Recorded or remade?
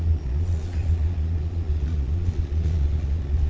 remade